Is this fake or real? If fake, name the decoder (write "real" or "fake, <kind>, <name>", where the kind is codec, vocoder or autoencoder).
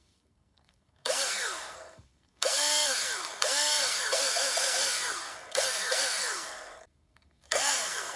fake, codec, SNAC